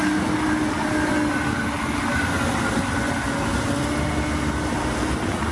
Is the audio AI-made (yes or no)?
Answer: no